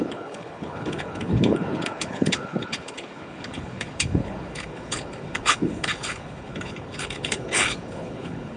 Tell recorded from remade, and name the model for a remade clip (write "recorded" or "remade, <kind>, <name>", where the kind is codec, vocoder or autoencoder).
remade, codec, HILCodec